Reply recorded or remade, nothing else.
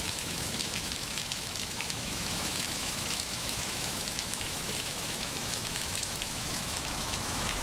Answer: remade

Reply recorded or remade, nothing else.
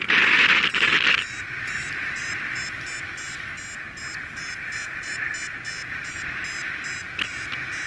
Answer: recorded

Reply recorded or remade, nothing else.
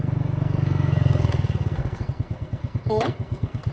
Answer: remade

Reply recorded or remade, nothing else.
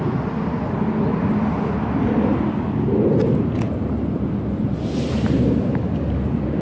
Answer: recorded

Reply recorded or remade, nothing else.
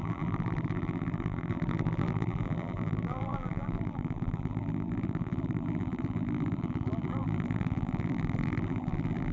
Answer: remade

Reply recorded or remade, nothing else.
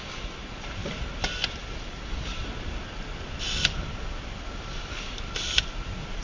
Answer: recorded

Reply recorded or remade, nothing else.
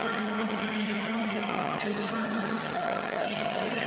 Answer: remade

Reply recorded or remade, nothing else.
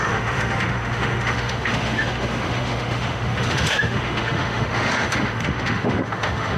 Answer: remade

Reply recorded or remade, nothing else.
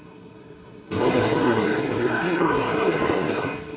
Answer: remade